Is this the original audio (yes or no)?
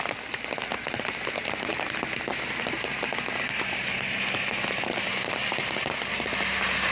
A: yes